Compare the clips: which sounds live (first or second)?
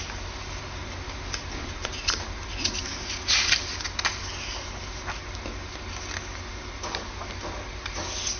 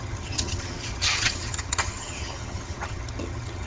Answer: first